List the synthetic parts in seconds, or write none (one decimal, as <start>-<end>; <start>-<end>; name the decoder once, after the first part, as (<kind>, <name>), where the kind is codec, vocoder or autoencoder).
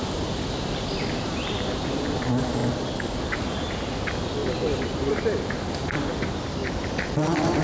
none